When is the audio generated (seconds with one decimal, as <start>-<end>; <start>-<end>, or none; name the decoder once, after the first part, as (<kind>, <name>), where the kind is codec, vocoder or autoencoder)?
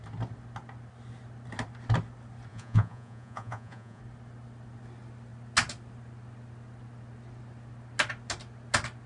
2.5-4.0 (vocoder, Vocos)